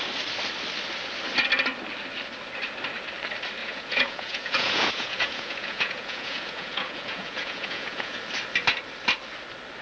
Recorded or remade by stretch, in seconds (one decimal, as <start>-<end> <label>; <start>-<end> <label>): 0.0-3.6 recorded; 3.6-8.2 remade; 8.2-9.8 recorded